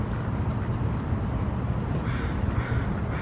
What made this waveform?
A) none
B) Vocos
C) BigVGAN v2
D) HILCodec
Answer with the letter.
A